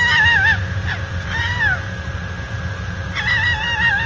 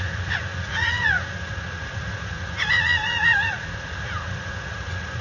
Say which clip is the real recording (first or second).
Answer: first